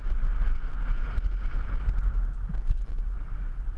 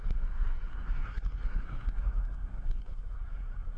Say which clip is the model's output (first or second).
second